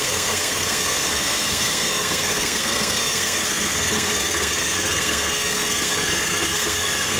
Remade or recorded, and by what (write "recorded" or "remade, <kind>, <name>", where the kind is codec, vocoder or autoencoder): remade, codec, SNAC